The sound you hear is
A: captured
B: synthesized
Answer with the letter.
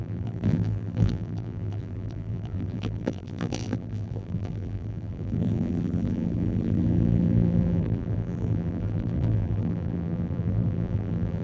B